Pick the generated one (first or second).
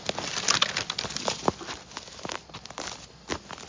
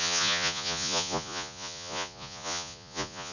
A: second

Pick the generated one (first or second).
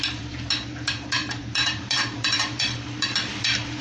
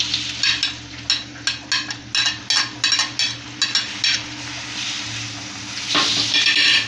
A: first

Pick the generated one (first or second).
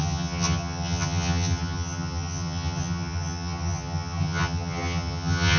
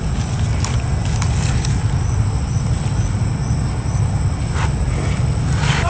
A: first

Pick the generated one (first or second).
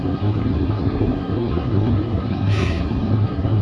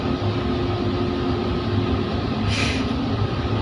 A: first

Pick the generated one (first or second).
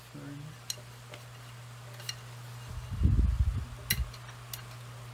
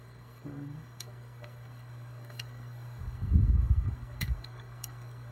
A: second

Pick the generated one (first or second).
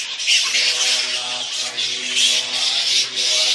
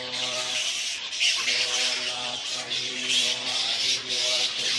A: second